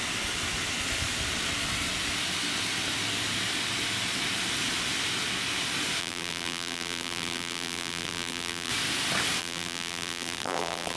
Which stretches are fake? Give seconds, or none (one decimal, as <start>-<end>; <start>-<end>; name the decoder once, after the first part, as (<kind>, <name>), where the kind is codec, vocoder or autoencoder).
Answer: 6.0-8.7 (vocoder, BigVGAN v2); 9.4-11.0